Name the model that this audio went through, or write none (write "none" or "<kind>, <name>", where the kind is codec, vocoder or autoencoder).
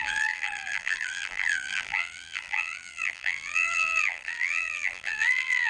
vocoder, BigVGAN v2